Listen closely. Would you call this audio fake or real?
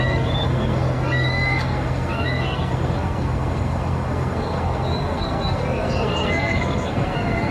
fake